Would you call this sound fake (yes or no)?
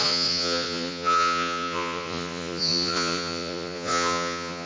yes